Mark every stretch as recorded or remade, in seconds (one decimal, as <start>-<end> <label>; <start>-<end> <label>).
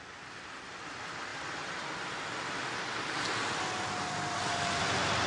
0.0-5.3 recorded